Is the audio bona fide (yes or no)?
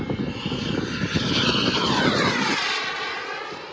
yes